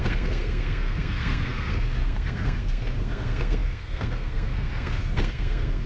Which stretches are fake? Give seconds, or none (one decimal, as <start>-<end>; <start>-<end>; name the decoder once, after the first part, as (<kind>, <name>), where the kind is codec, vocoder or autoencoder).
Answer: 0.0-5.9 (codec, SNAC)